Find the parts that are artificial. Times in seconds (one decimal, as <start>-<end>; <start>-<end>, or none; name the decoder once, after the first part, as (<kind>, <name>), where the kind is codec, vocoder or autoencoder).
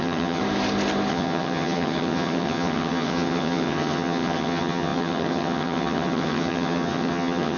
0.0-0.4 (vocoder, HiFi-GAN); 1.1-7.6